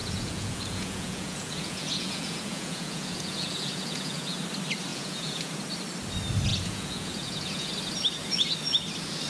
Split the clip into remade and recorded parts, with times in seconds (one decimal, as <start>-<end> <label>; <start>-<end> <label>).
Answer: 0.0-4.4 remade; 4.4-4.9 recorded; 4.9-5.5 remade; 5.5-6.5 recorded; 6.5-7.7 remade; 7.7-9.3 recorded